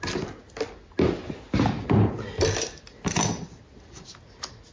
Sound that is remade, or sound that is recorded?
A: recorded